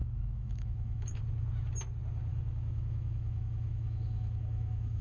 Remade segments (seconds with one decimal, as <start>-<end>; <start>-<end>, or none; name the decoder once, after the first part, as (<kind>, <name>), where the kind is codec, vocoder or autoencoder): 0.0-1.2 (autoencoder, DAC-VAE); 2.3-5.0